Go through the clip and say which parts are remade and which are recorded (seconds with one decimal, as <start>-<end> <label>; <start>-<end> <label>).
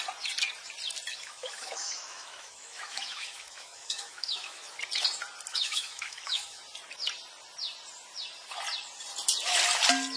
0.0-1.1 recorded; 1.1-4.8 remade; 4.8-5.5 recorded; 5.5-6.6 remade; 6.6-10.2 recorded